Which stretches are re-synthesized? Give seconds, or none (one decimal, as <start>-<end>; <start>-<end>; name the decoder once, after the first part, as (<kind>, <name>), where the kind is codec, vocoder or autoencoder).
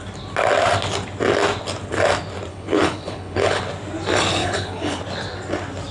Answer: 2.5-3.6 (codec, HILCodec); 4.4-5.0